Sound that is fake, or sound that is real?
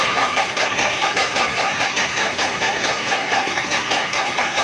fake